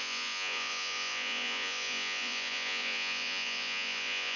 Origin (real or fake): fake